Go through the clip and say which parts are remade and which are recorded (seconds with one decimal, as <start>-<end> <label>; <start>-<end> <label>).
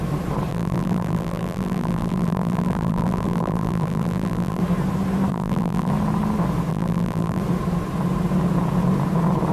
0.0-0.5 recorded; 0.5-4.6 remade; 4.6-5.3 recorded; 5.3-5.9 remade; 5.9-6.7 recorded; 6.7-7.4 remade; 7.4-9.5 recorded